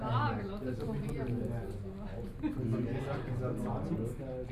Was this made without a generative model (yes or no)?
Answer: yes